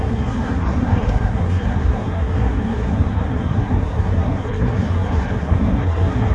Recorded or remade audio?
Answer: remade